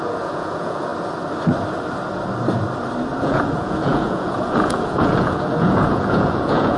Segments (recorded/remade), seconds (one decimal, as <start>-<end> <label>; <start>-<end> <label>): 0.0-0.9 remade; 0.9-3.2 recorded; 3.2-6.8 remade